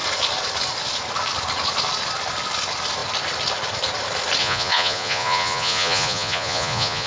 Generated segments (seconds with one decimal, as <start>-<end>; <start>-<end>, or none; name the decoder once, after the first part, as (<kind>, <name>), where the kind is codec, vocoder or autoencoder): 4.4-7.1 (vocoder, Vocos)